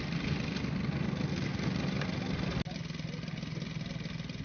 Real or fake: real